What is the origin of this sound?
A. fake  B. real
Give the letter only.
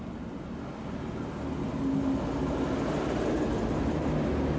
B